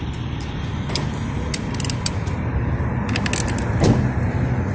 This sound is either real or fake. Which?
real